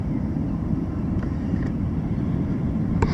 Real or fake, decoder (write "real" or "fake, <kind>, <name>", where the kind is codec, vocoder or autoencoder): real